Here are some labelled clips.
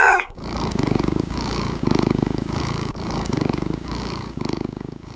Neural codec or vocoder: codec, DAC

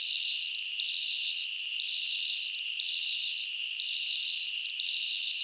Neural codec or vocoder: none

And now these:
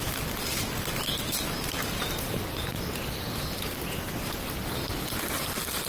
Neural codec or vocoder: none